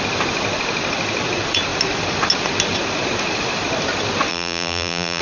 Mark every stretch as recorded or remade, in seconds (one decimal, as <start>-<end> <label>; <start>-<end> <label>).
0.0-4.3 recorded; 4.3-5.2 remade